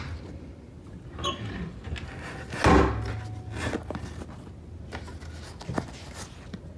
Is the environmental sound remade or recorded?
recorded